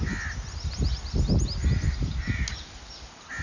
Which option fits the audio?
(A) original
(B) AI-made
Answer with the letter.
A